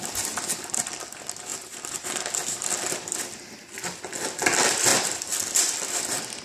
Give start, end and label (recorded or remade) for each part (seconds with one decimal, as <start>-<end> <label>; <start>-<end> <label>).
0.0-4.9 recorded; 4.9-6.0 remade; 6.0-6.4 recorded